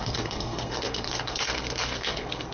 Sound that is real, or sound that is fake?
fake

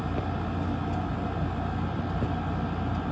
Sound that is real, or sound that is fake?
real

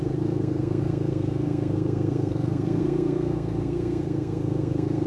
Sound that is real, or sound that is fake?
fake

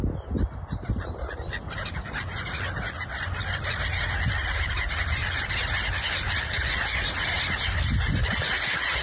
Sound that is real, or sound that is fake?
real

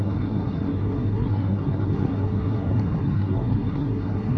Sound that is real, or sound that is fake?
fake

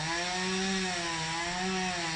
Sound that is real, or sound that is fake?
real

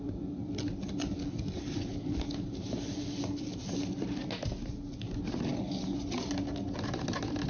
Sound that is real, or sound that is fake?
real